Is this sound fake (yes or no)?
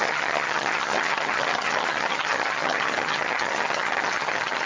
yes